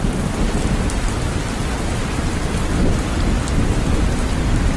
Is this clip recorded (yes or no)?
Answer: no